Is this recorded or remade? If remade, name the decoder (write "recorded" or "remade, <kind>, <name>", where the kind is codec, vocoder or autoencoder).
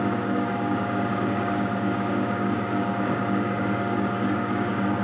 remade, codec, DAC